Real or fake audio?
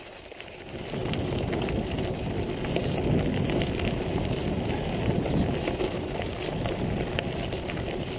real